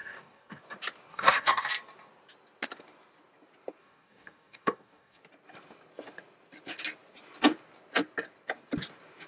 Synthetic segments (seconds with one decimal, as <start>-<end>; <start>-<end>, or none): 0.0-0.6; 1.1-1.7; 3.8-5.2